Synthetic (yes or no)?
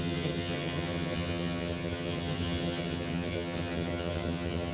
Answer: yes